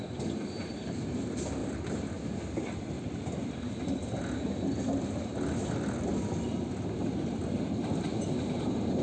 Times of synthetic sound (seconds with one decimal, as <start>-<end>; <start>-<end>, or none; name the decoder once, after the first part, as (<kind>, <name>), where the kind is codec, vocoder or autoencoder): 0.0-1.6 (vocoder, BigVGAN v2); 6.7-7.4; 8.5-9.0